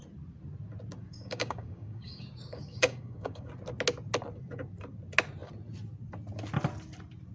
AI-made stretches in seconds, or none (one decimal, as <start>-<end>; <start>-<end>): 1.1-3.5